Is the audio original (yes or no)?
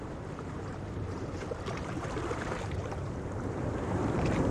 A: no